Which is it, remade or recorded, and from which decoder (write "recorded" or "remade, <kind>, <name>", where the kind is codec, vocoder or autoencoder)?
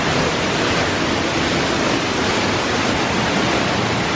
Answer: recorded